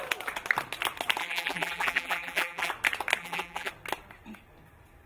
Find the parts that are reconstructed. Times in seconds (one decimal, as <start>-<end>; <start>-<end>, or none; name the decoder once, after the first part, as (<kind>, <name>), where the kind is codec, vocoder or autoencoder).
1.2-2.7 (vocoder, BigVGAN v2); 3.2-3.7

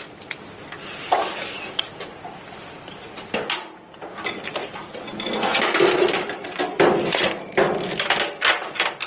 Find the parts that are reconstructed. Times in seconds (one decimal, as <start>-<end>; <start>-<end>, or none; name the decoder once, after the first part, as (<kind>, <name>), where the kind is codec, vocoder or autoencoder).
none

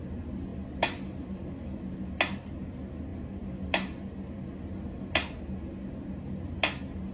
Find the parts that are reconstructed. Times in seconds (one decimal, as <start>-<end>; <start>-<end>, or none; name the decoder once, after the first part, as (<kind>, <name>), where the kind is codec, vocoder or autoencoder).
none

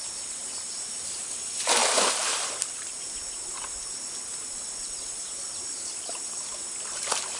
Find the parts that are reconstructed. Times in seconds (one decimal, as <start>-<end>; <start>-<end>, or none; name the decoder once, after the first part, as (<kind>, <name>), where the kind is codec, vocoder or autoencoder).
0.4-1.2 (vocoder, BigVGAN v2); 1.8-3.3

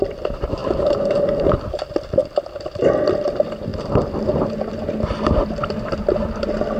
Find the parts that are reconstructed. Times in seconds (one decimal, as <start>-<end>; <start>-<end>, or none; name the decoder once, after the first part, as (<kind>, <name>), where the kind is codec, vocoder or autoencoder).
0.0-2.2 (vocoder, BigVGAN v2); 3.3-3.7

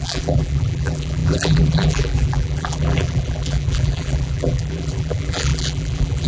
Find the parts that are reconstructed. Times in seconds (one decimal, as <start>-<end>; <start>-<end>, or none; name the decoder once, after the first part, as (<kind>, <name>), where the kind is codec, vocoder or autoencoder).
0.0-6.3 (vocoder, BigVGAN v2)